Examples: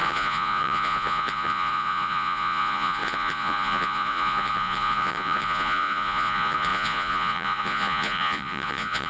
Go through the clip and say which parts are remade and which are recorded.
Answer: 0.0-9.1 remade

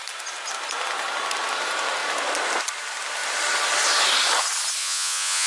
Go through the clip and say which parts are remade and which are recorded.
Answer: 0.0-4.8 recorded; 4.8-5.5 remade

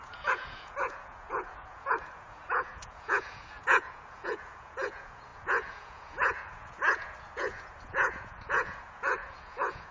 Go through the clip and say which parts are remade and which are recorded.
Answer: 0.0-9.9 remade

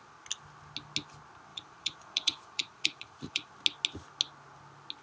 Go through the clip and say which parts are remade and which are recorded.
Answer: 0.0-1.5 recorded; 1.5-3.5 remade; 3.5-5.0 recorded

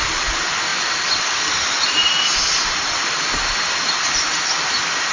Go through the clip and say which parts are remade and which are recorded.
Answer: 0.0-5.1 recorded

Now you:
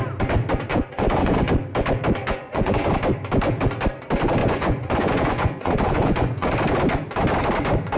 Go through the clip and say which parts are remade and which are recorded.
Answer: 0.0-0.7 recorded; 0.7-1.5 remade; 1.5-2.2 recorded; 2.2-2.9 remade; 2.9-4.4 recorded; 4.4-6.5 remade; 6.5-8.0 recorded